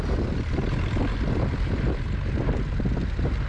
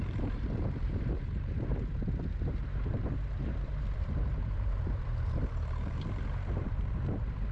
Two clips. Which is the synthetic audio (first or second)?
second